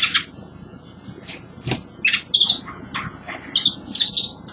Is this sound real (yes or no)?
yes